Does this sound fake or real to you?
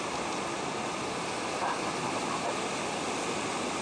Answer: real